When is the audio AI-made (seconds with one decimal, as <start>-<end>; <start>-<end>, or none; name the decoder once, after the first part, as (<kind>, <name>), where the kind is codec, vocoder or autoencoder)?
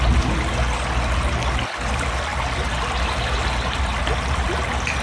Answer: none